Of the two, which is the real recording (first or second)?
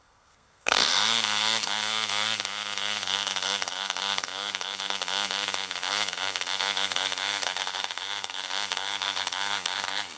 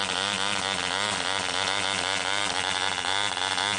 second